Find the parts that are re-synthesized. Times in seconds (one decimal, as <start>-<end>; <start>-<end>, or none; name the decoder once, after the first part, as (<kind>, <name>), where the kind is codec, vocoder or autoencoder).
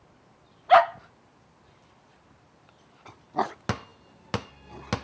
none